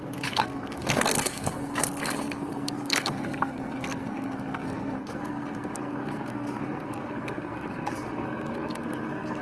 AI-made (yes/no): yes